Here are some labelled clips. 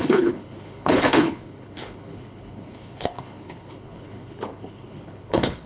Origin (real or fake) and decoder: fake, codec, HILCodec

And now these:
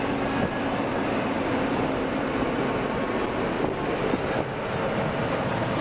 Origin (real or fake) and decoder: real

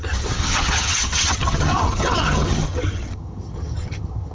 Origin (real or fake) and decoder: fake, vocoder, HiFi-GAN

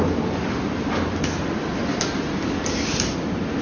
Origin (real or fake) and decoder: real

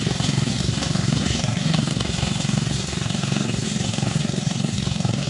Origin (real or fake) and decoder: fake, codec, SNAC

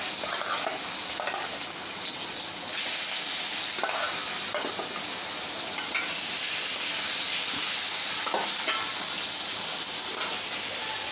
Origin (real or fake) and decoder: real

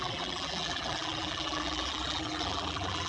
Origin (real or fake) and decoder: fake, vocoder, BigVGAN v2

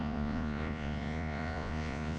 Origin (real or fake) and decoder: fake, vocoder, Vocos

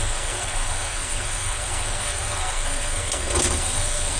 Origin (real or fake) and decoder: fake, codec, SNAC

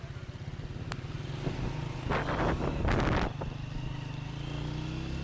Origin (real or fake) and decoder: real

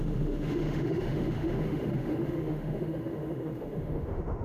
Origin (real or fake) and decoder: fake, autoencoder, DAC-VAE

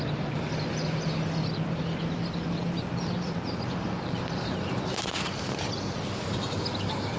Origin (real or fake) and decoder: real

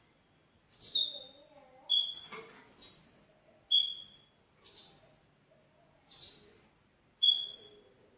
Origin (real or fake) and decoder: real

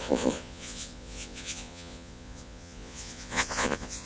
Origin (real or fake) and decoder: fake, vocoder, Vocos